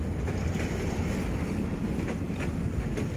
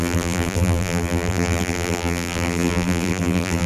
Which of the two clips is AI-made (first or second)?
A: second